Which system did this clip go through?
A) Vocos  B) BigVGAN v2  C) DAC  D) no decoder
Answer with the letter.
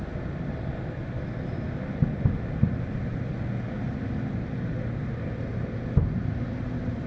D